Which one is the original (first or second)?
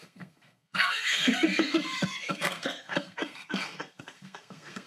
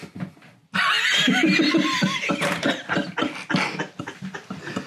second